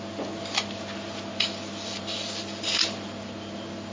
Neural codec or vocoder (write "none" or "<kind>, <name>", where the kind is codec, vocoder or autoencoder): none